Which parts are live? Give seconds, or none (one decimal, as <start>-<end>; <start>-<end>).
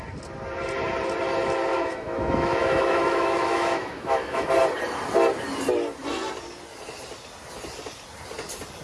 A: 0.0-1.7; 4.5-8.8